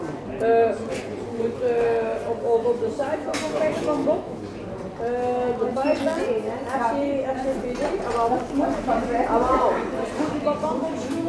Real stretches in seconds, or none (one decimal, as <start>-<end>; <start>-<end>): 0.0-3.0; 4.4-10.6